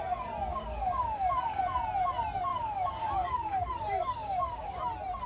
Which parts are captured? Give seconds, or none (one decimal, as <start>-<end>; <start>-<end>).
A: 0.0-0.5; 1.6-2.5; 4.8-5.3